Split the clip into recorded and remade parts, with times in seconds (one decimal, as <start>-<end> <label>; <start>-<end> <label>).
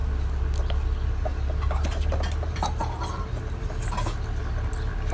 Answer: 0.0-5.1 recorded